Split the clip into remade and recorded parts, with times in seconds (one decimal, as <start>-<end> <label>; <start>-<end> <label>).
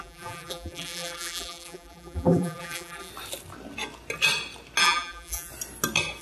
0.0-3.1 remade; 3.1-4.8 recorded; 4.8-5.5 remade; 5.5-6.2 recorded